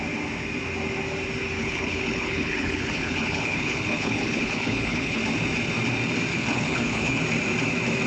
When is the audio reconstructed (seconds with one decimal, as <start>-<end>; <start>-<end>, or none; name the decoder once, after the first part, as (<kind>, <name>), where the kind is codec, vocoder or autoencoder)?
1.6-5.2 (codec, HILCodec); 6.3-7.2